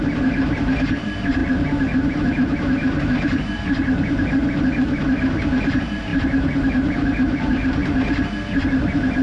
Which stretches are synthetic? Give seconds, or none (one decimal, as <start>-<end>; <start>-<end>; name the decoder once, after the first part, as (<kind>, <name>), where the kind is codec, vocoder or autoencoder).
0.0-4.4 (vocoder, BigVGAN v2); 5.2-7.8; 8.7-9.2